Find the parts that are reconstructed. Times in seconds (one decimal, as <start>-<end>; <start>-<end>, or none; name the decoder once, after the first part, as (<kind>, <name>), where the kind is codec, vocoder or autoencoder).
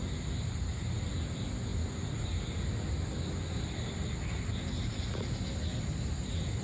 none